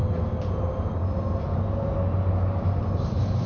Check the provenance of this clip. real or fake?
real